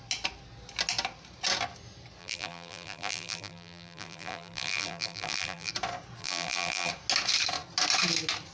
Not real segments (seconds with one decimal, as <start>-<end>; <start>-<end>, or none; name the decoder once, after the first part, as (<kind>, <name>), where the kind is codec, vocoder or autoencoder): 2.2-5.7 (vocoder, BigVGAN v2); 6.2-6.9

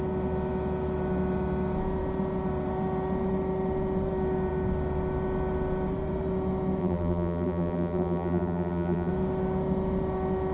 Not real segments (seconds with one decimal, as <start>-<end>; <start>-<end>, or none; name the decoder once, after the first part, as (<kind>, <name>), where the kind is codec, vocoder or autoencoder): 6.8-9.1 (vocoder, BigVGAN v2)

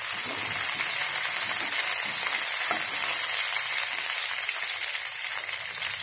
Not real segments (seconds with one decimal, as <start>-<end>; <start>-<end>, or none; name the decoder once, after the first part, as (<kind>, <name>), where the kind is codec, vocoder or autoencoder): none